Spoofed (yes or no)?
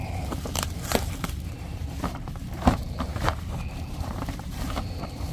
yes